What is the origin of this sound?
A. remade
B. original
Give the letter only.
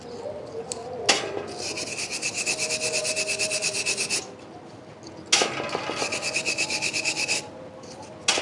B